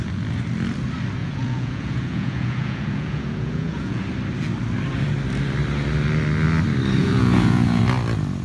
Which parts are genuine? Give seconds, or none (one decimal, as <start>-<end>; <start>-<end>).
0.0-1.2; 4.0-7.0; 7.8-8.4